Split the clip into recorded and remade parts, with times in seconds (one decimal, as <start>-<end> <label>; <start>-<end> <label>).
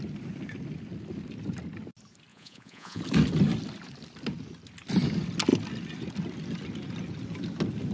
0.0-2.3 recorded; 2.3-3.0 remade; 3.0-7.9 recorded